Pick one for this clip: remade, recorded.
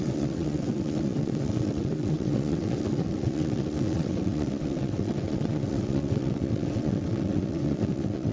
remade